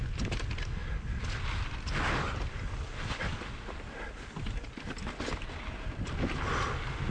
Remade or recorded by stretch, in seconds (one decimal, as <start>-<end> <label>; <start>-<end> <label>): 0.0-7.1 recorded

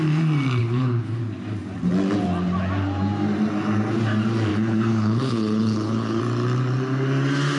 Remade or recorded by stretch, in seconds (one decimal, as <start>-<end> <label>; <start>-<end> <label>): 0.0-0.6 recorded; 0.6-1.2 remade; 1.2-4.5 recorded; 4.5-6.2 remade; 6.2-7.6 recorded

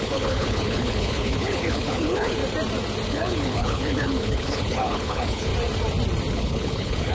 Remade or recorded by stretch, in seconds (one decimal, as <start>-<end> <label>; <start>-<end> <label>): 0.0-2.4 remade; 2.4-3.1 recorded; 3.1-5.5 remade; 5.5-6.3 recorded; 6.3-7.1 remade